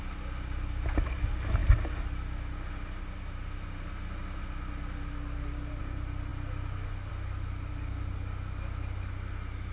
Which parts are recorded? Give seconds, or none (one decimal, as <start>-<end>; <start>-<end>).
0.0-9.7